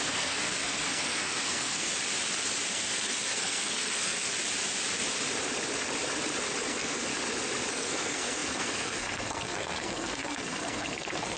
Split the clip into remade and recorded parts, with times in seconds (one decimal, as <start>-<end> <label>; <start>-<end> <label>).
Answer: 0.0-1.9 remade; 1.9-2.7 recorded; 2.7-4.3 remade; 4.3-6.6 recorded; 6.6-7.1 remade; 7.1-7.7 recorded; 7.7-11.4 remade